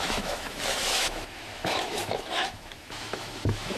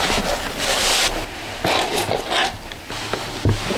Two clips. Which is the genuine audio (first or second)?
second